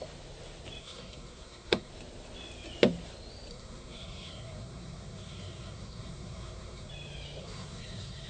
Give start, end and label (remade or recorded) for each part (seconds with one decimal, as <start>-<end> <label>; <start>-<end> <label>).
0.0-0.8 recorded; 0.8-1.9 remade; 1.9-3.5 recorded; 3.5-6.9 remade; 6.9-7.4 recorded; 7.4-8.3 remade